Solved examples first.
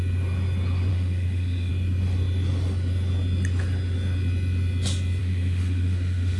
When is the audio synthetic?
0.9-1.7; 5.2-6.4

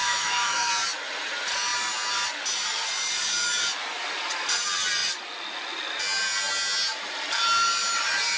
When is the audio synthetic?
0.0-0.7

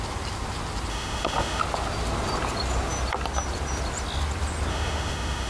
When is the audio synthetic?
0.9-1.6; 4.7-5.5

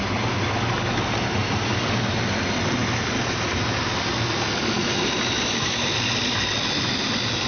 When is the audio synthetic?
none

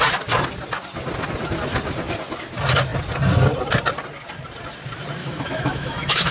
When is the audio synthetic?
5.2-6.3

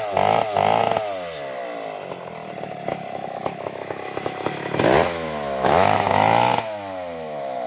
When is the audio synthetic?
2.9-7.7